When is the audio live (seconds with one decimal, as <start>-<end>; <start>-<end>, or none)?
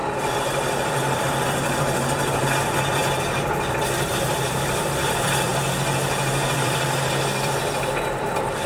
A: 3.0-3.9; 5.5-6.3